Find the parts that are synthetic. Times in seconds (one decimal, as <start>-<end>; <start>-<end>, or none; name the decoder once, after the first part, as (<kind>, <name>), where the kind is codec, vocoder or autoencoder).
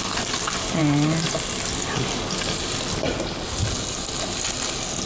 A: none